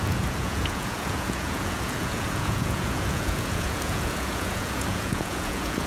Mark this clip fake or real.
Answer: fake